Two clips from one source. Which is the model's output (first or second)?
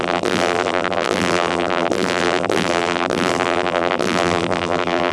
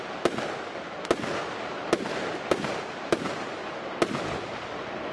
first